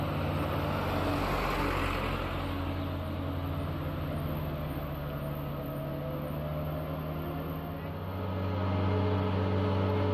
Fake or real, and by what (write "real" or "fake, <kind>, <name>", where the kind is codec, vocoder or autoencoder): real